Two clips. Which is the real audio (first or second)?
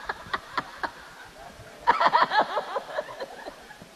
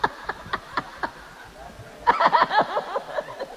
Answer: second